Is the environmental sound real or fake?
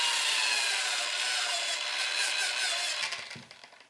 real